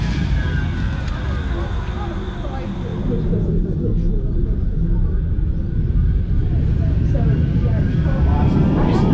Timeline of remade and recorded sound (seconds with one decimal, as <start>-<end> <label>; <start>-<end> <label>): 0.0-9.1 recorded